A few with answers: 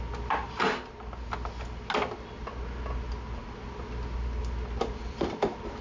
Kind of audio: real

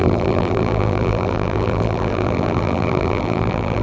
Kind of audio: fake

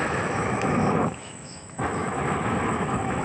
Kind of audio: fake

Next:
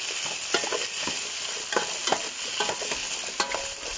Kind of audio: real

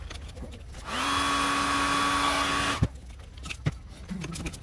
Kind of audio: real